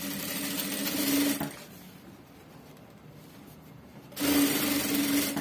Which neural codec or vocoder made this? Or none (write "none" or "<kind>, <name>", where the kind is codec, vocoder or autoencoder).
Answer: none